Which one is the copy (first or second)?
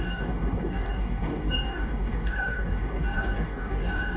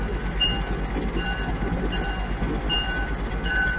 first